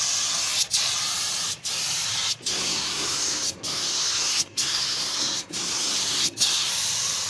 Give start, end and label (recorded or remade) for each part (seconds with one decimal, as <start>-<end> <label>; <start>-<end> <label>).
0.0-2.5 recorded; 2.5-6.7 remade; 6.7-7.3 recorded